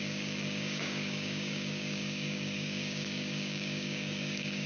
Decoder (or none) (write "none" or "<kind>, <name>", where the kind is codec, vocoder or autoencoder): codec, DAC